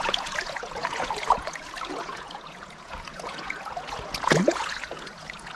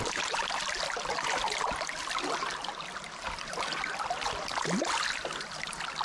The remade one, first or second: first